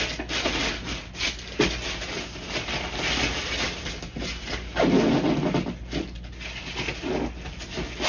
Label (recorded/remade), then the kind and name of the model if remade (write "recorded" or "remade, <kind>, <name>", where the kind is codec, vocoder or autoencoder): recorded